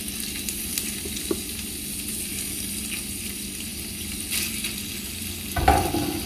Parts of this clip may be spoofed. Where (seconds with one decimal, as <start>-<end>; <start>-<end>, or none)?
none